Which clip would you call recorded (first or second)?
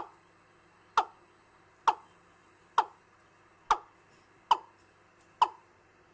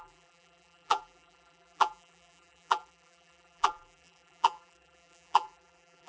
first